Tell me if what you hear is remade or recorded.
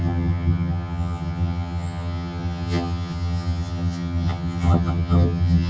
remade